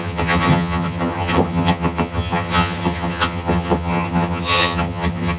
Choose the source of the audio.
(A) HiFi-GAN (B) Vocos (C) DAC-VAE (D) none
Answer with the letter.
A